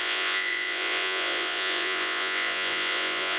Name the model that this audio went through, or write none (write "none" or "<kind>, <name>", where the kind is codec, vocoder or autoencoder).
vocoder, Vocos